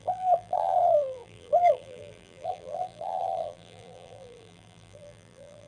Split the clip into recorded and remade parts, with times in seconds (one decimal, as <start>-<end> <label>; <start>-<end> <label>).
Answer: 0.0-5.7 remade